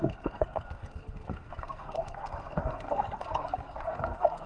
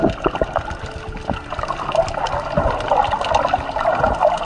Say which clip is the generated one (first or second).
first